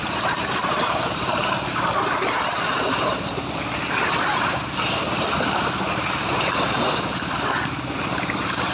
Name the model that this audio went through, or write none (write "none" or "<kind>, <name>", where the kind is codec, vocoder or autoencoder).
none